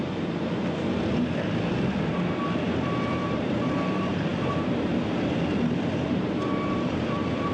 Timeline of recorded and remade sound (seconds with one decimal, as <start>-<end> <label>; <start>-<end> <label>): 0.0-0.6 remade; 0.6-3.0 recorded; 3.0-7.5 remade